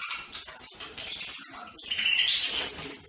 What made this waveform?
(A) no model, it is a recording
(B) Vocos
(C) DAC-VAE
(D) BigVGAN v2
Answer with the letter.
A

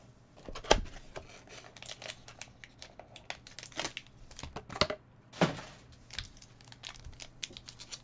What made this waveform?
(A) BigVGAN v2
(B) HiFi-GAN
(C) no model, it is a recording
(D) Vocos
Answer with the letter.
C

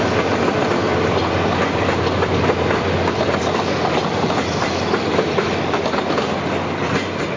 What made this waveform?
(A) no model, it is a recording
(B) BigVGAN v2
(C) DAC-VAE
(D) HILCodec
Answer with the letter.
B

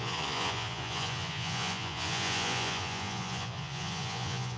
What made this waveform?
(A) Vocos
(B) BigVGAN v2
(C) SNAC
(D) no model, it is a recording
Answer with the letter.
A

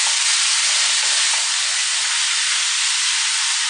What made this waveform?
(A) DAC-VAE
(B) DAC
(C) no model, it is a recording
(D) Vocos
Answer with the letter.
C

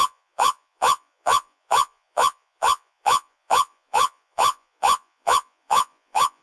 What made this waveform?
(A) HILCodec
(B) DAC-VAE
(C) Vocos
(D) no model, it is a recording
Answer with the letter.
C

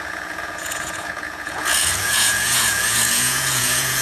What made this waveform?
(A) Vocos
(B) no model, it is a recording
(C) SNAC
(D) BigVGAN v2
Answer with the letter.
A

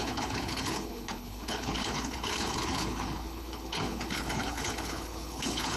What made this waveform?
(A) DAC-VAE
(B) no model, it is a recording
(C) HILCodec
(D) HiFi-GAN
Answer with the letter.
C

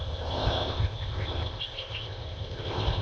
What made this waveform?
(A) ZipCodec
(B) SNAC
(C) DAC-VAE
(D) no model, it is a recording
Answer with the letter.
A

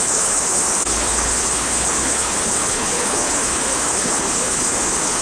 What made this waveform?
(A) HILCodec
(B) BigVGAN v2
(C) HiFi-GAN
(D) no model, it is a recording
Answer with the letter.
A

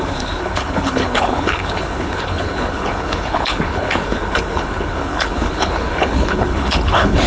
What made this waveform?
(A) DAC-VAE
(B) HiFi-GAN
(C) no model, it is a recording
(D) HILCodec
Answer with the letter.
D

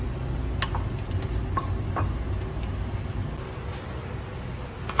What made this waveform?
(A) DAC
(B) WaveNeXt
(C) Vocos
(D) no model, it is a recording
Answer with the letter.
D